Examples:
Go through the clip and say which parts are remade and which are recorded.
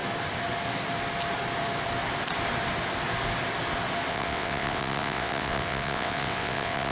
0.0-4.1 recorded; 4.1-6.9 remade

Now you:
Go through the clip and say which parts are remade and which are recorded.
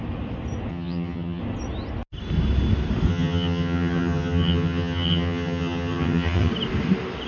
0.0-0.7 recorded; 0.7-1.4 remade; 1.4-3.1 recorded; 3.1-6.5 remade; 6.5-7.3 recorded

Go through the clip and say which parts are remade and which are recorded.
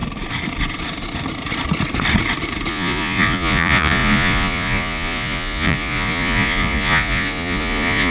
0.0-2.7 recorded; 2.7-8.1 remade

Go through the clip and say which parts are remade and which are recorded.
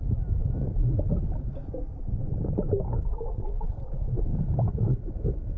0.0-0.4 recorded; 0.4-3.8 remade; 3.8-5.6 recorded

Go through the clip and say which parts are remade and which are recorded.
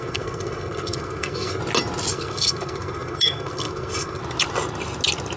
0.0-1.6 remade; 1.6-2.1 recorded; 2.1-4.2 remade; 4.2-5.4 recorded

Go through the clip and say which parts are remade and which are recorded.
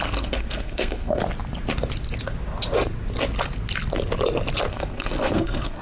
0.0-1.2 remade; 1.2-4.7 recorded; 4.7-5.8 remade